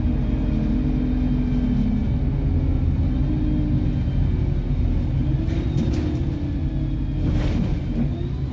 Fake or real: real